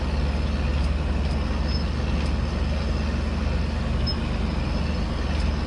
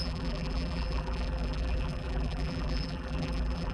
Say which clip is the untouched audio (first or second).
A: first